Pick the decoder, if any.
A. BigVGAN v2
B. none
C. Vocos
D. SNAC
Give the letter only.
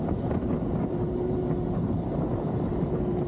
A